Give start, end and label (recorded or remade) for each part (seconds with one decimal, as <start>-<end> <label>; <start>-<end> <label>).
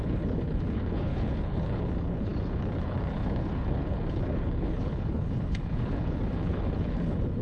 0.0-7.4 remade